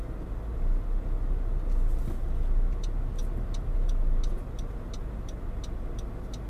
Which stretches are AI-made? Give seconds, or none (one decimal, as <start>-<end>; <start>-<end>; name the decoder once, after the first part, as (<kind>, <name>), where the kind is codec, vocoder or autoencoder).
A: none